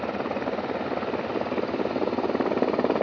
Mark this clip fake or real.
real